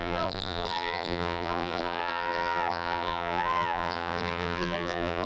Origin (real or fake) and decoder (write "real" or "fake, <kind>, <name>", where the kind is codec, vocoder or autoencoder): fake, vocoder, BigVGAN v2